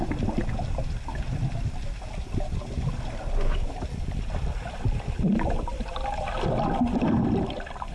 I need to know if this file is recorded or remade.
recorded